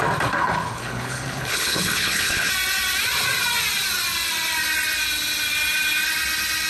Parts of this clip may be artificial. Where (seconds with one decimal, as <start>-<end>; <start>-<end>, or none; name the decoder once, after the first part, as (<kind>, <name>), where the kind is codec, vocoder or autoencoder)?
0.4-2.5 (codec, HILCodec)